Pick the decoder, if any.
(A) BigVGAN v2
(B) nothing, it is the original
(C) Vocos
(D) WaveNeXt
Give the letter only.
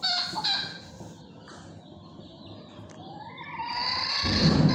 B